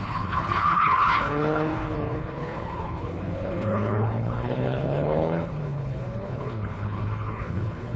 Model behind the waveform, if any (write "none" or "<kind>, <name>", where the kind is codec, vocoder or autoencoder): codec, HILCodec